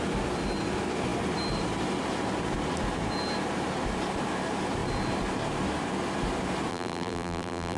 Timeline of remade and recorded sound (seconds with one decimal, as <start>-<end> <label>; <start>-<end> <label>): 0.0-6.7 recorded; 6.7-7.8 remade